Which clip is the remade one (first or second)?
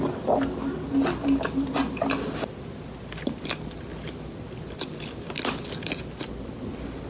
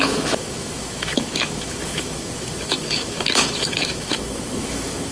second